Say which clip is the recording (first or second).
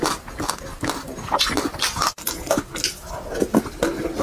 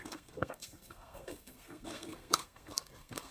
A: first